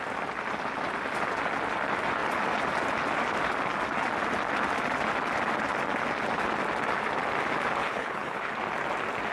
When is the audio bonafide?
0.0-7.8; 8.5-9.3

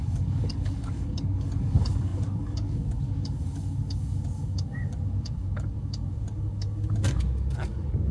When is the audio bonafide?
none